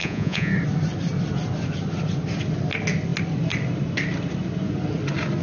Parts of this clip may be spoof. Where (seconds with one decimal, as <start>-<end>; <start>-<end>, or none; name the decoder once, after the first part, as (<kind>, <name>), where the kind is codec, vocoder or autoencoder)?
0.0-0.5 (vocoder, Vocos)